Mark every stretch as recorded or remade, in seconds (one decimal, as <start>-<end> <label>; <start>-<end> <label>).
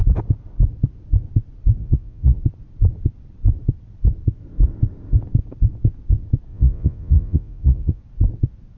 0.0-1.8 recorded; 1.8-2.4 remade; 2.4-6.5 recorded; 6.5-8.0 remade; 8.0-8.8 recorded